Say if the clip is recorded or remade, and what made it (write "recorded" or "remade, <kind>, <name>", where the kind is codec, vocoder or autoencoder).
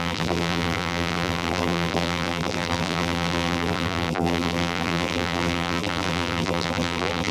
remade, vocoder, BigVGAN v2